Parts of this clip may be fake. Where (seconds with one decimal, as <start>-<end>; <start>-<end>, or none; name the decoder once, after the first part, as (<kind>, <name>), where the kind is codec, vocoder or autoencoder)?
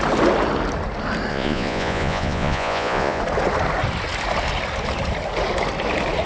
1.3-3.2 (vocoder, Vocos)